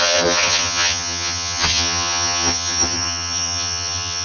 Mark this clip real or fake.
fake